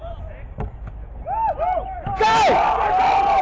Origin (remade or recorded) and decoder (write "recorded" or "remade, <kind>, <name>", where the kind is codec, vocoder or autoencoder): recorded